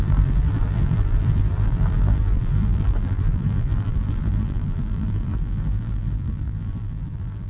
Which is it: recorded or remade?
remade